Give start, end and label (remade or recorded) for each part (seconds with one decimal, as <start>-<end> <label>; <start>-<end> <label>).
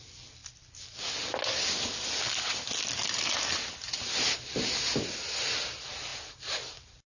0.0-7.1 recorded